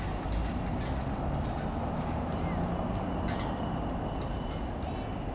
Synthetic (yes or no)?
no